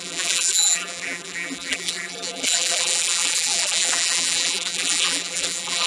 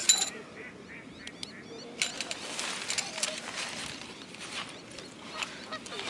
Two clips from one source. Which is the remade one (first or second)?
first